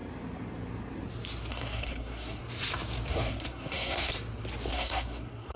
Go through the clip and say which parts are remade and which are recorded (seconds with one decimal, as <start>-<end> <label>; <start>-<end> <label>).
0.0-1.5 recorded; 1.5-2.4 remade; 2.4-3.1 recorded; 3.1-4.1 remade; 4.1-4.7 recorded; 4.7-5.6 remade